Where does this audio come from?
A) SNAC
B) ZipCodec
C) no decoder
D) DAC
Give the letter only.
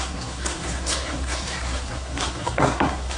A